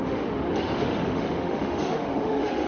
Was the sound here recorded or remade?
remade